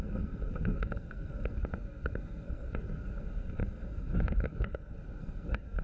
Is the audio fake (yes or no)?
yes